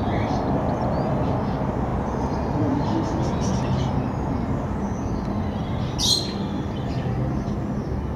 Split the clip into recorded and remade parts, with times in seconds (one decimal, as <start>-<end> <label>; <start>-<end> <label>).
0.0-8.2 recorded